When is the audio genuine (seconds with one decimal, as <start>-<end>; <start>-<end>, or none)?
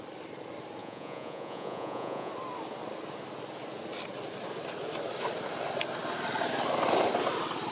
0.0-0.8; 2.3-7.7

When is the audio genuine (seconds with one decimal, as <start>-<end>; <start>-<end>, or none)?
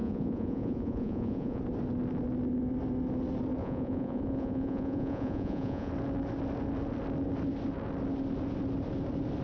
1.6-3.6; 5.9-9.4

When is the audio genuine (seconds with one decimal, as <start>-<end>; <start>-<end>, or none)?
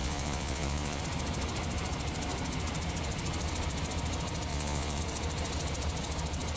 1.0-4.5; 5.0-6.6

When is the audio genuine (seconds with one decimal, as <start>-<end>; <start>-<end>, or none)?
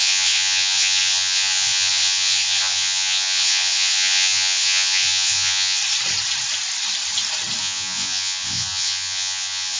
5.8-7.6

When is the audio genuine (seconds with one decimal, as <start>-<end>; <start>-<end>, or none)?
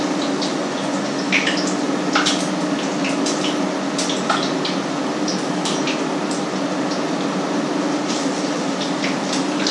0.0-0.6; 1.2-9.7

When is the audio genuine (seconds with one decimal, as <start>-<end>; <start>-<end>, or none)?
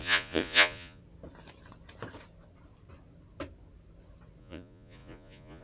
1.0-4.4